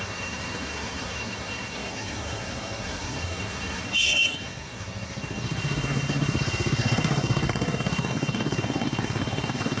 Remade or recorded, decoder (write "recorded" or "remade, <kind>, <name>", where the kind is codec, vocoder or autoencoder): remade, codec, SNAC